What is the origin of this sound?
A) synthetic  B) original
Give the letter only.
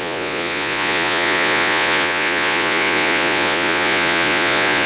A